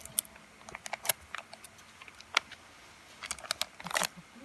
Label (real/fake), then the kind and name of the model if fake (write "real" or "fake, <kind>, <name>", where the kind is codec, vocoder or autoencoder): real